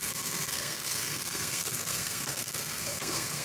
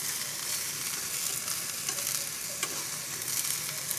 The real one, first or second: second